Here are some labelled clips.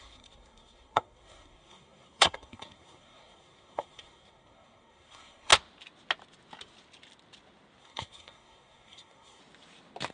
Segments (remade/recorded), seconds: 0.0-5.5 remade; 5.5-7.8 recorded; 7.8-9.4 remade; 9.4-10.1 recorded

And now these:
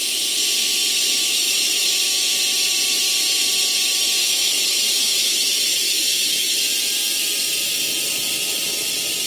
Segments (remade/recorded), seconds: 0.0-1.3 recorded; 1.3-1.9 remade; 1.9-4.2 recorded; 4.2-6.6 remade; 6.6-9.3 recorded

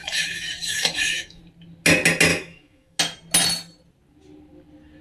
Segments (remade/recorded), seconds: 0.0-1.4 remade; 1.4-2.3 recorded; 2.3-3.0 remade; 3.0-5.0 recorded

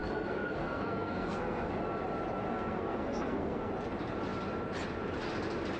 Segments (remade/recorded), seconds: 0.0-1.7 remade; 1.7-2.5 recorded; 2.5-3.7 remade; 3.7-5.8 recorded

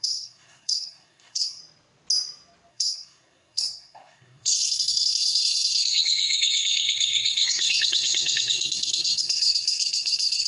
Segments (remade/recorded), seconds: 0.0-1.6 remade; 1.6-2.7 recorded; 2.7-10.5 remade

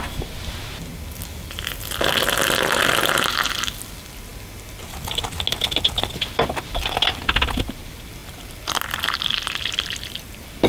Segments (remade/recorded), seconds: 0.0-10.7 recorded